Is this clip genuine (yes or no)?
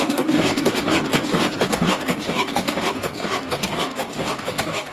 no